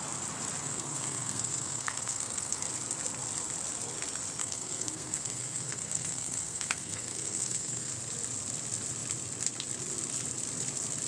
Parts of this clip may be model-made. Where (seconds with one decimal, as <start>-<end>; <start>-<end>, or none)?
0.6-2.7; 4.4-7.9